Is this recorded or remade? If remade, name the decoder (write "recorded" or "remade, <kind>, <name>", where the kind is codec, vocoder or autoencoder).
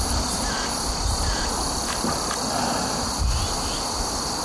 recorded